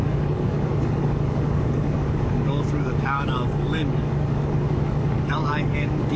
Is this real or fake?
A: fake